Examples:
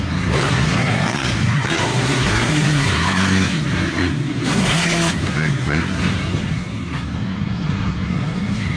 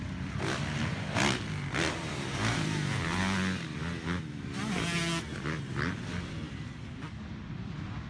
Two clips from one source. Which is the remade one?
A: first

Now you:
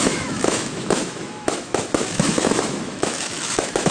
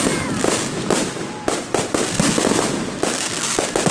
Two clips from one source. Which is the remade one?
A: first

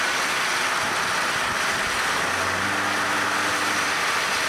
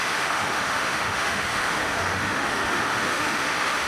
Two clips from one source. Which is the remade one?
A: second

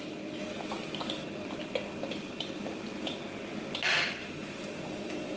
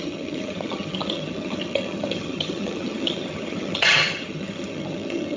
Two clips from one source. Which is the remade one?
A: second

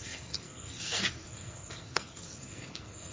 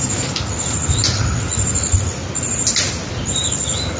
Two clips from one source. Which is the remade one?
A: first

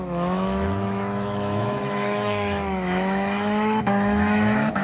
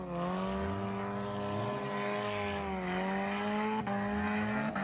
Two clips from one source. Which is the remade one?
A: first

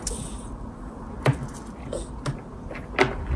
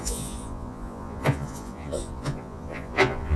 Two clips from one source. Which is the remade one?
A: second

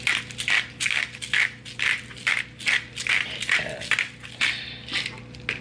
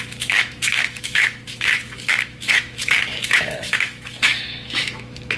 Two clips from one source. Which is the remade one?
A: second